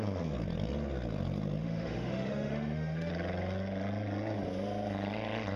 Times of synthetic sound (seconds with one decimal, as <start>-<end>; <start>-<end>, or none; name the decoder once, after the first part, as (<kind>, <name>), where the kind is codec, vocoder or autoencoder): 1.6-3.1 (autoencoder, DAC-VAE)